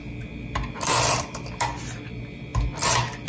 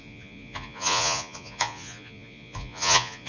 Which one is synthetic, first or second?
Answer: second